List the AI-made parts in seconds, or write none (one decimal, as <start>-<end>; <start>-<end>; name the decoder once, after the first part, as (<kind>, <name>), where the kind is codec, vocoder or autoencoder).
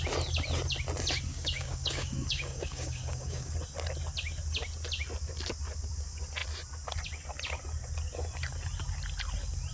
1.3-3.5 (codec, DAC)